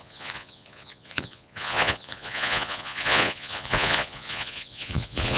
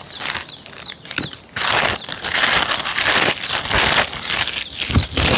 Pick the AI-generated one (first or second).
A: first